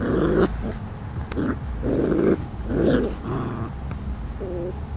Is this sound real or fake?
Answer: real